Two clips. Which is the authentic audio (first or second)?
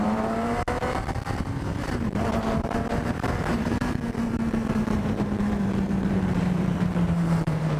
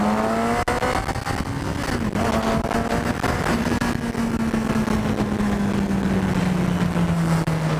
second